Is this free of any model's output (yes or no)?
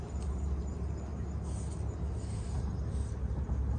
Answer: yes